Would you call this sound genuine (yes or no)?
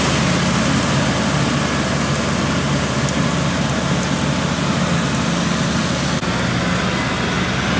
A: yes